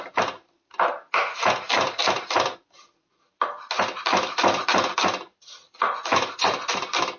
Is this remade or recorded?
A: recorded